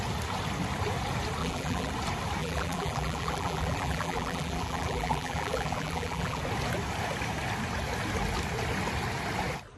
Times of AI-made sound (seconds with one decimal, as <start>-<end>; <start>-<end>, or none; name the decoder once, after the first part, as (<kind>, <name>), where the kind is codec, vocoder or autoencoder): 1.4-1.9 (vocoder, BigVGAN v2); 2.4-6.4